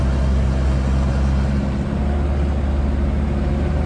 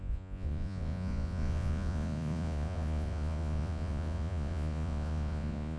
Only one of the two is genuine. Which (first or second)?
first